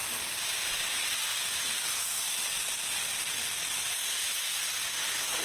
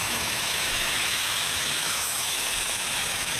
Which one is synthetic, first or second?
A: second